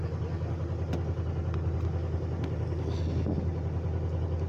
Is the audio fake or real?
real